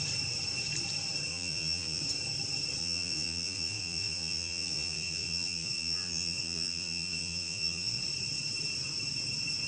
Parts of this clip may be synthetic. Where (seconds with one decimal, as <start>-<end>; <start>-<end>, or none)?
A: 1.3-2.0; 2.8-8.0